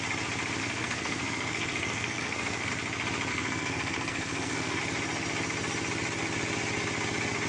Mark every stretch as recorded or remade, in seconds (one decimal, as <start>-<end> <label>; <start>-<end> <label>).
0.0-0.6 recorded; 0.6-2.7 remade; 2.7-3.3 recorded; 3.3-4.8 remade; 4.8-7.5 recorded